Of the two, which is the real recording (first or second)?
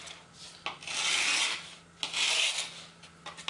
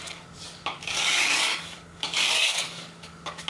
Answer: first